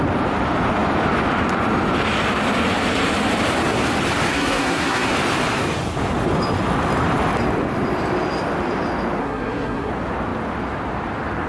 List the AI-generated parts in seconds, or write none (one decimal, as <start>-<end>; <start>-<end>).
4.3-5.1; 9.2-9.9